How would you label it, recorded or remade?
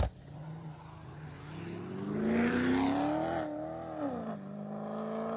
recorded